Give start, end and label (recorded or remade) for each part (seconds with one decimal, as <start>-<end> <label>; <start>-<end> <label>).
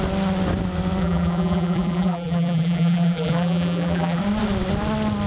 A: 0.0-1.0 recorded; 1.0-4.2 remade; 4.2-5.3 recorded